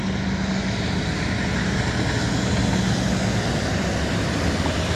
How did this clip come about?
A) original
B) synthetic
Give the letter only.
A